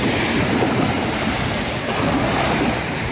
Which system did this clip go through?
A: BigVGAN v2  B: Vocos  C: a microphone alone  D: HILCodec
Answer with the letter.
C